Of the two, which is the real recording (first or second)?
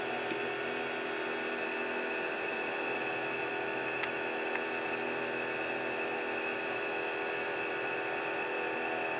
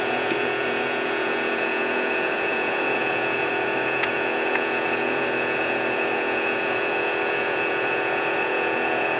first